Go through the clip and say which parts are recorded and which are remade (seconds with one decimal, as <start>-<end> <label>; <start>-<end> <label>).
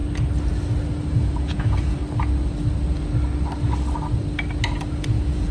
0.0-0.9 recorded; 0.9-2.0 remade; 2.0-4.9 recorded; 4.9-5.5 remade